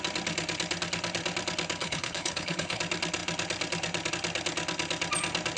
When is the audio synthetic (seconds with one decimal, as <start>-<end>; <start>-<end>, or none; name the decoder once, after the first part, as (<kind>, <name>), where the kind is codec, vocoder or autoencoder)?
1.8-2.8 (codec, HILCodec)